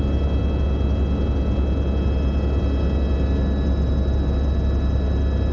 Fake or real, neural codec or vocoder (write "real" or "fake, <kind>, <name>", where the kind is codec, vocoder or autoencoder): real